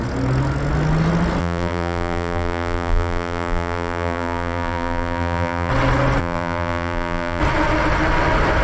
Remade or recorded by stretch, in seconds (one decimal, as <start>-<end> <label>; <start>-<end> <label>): 0.0-1.4 recorded; 1.4-5.7 remade; 5.7-6.2 recorded; 6.2-7.4 remade; 7.4-8.6 recorded